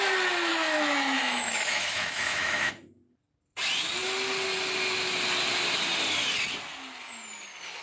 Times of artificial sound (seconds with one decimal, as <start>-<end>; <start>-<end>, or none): 0.5-2.7